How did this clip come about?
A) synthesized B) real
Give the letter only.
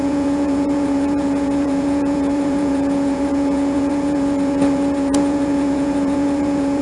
A